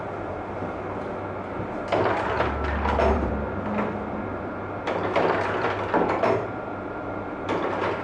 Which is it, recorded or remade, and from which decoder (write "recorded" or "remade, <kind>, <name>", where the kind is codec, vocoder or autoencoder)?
recorded